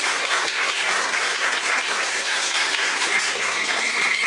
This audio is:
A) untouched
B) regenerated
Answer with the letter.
B